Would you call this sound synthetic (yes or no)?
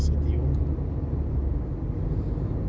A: no